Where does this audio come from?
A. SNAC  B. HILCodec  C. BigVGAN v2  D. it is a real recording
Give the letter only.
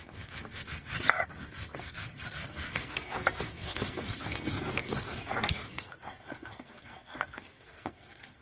A